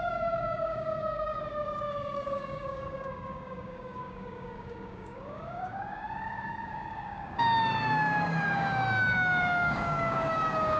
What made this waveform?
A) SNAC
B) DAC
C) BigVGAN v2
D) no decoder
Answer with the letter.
B